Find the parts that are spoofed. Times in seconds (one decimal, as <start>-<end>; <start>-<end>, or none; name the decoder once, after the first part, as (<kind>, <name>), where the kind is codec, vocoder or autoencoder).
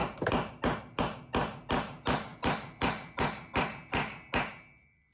none